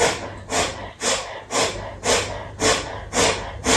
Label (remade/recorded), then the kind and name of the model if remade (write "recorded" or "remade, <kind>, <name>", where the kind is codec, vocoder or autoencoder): recorded